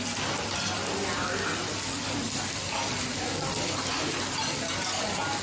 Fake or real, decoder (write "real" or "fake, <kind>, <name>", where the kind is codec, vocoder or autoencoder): real